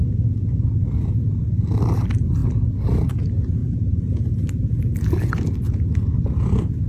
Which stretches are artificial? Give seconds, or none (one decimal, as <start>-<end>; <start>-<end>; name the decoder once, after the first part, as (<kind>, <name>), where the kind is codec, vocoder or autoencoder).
none